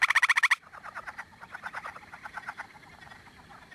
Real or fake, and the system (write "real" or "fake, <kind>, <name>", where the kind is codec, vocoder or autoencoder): real